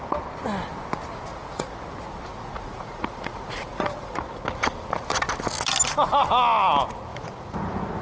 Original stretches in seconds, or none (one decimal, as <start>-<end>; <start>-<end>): 0.0-1.3; 1.8-2.3; 4.4-7.1